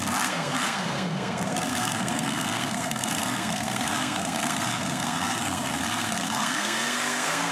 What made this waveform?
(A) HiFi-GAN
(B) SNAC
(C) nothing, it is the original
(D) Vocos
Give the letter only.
B